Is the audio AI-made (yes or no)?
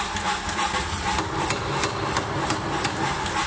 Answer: no